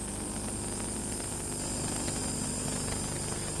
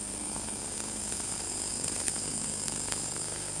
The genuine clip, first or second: first